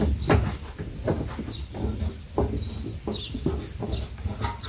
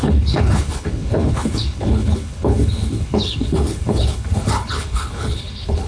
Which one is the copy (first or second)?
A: second